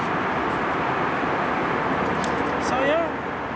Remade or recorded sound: recorded